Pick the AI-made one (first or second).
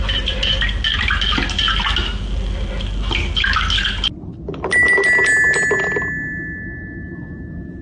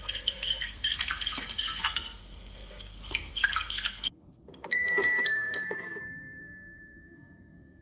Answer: second